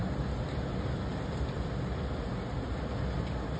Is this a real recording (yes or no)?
yes